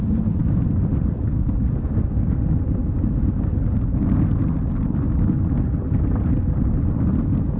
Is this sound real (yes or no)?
yes